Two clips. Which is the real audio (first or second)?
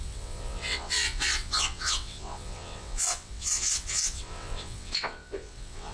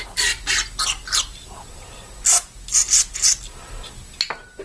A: second